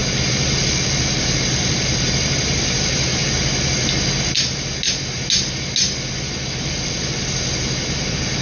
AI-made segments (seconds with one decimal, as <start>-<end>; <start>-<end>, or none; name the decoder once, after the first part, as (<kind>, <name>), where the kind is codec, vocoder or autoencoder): 0.0-3.2 (vocoder, BigVGAN v2); 6.6-8.4